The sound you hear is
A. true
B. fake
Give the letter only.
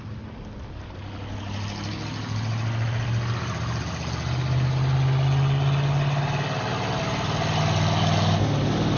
A